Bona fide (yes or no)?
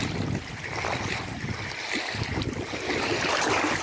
yes